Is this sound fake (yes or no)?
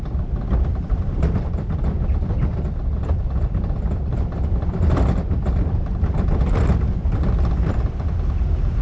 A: yes